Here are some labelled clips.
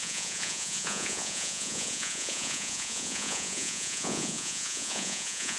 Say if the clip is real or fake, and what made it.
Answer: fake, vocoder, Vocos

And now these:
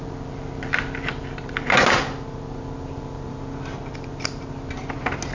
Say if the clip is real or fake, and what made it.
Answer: real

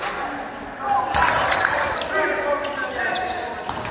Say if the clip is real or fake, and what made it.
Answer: real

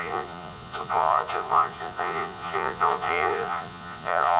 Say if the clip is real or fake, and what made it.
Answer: fake, vocoder, Vocos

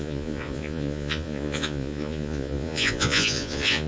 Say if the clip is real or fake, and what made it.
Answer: fake, vocoder, Vocos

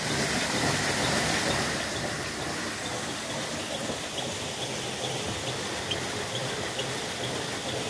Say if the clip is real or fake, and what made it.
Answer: real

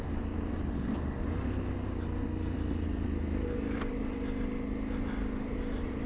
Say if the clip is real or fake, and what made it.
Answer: real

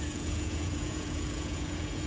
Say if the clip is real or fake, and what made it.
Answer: fake, vocoder, Vocos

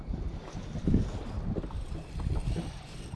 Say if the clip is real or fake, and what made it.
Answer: real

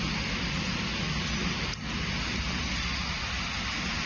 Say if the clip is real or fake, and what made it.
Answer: real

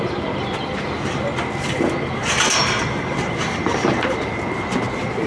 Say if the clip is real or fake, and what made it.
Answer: real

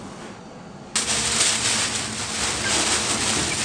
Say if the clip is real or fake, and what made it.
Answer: real